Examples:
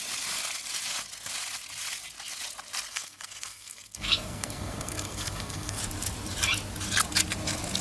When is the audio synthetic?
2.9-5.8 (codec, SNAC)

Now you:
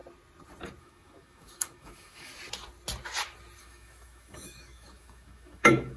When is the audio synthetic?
0.8-2.3 (autoencoder, DAC-VAE); 3.6-6.0

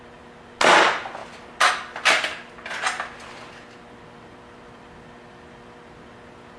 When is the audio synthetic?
none